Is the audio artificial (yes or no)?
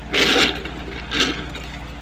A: no